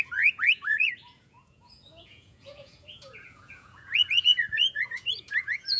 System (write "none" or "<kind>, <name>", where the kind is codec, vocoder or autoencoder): vocoder, Vocos